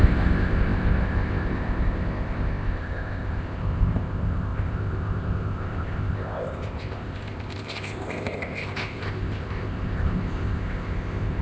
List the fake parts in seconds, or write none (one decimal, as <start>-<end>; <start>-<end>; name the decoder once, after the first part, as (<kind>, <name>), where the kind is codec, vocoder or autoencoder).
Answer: 0.0-11.4 (codec, ZipCodec)